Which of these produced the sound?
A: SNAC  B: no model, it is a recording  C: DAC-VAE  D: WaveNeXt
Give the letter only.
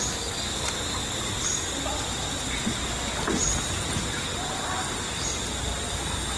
B